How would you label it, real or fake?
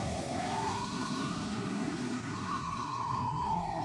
fake